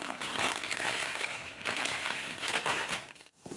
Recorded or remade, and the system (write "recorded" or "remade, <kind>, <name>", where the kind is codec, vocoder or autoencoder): remade, codec, SNAC